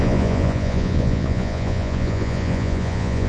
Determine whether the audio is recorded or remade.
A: remade